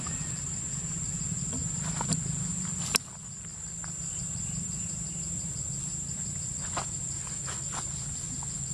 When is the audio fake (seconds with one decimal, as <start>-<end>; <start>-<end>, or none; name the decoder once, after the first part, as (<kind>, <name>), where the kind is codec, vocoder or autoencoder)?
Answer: 1.6-2.1 (vocoder, BigVGAN v2); 3.5-6.4